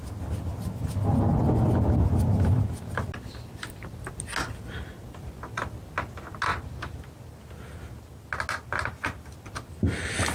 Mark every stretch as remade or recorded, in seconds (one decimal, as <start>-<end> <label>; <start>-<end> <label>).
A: 0.0-10.3 recorded